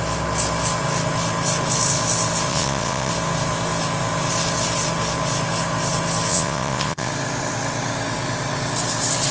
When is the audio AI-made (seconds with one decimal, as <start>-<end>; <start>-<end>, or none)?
2.5-3.1; 6.3-7.1